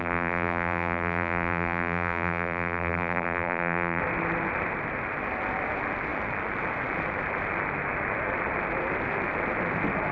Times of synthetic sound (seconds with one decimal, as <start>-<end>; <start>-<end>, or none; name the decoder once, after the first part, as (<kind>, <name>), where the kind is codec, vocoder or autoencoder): 0.0-4.0 (vocoder, BigVGAN v2)